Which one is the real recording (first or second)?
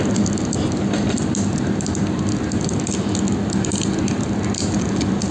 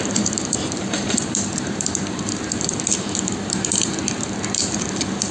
first